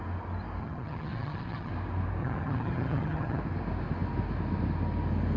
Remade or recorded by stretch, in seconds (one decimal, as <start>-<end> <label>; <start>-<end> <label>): 0.0-0.6 recorded; 0.6-1.7 remade; 1.7-2.2 recorded; 2.2-3.4 remade; 3.4-5.4 recorded